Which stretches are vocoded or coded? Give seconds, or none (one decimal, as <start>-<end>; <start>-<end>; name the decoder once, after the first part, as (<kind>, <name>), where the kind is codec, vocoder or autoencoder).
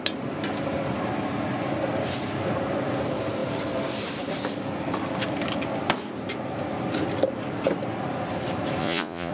8.8-9.3 (vocoder, Vocos)